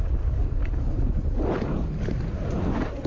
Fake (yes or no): no